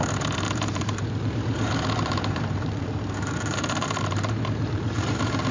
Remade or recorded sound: remade